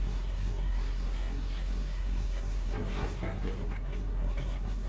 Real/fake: fake